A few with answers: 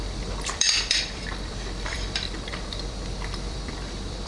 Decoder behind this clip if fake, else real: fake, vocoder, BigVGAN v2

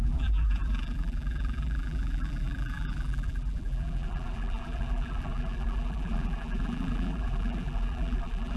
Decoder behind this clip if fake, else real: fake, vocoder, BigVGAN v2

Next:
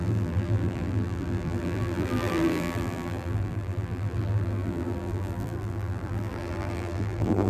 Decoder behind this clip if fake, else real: fake, vocoder, BigVGAN v2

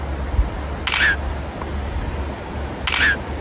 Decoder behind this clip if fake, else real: real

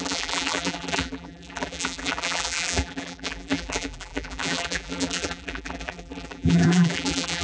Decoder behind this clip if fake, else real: fake, vocoder, BigVGAN v2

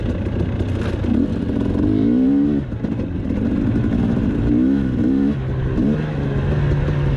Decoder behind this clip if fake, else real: real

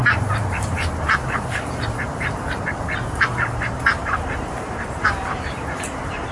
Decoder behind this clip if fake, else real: fake, vocoder, BigVGAN v2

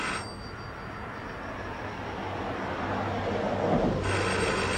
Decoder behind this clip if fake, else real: real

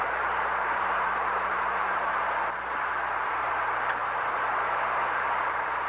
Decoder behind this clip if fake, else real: fake, vocoder, BigVGAN v2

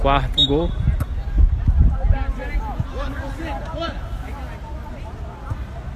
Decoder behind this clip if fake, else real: real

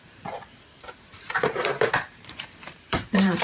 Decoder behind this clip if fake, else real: fake, vocoder, BigVGAN v2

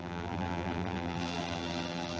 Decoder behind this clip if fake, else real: fake, vocoder, BigVGAN v2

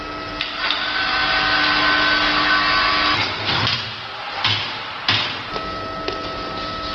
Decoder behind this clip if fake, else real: real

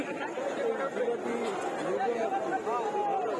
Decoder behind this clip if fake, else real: real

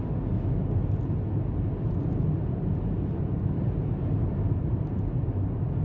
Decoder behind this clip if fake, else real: real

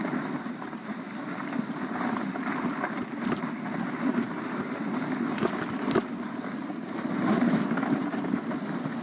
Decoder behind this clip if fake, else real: real